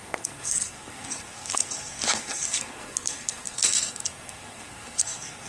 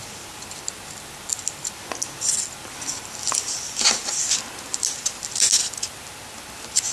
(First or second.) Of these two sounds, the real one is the second